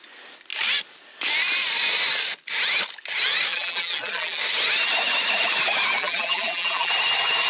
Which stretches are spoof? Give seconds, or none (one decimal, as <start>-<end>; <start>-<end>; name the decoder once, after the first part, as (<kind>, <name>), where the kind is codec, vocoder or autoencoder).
3.5-4.4 (vocoder, BigVGAN v2); 6.0-6.9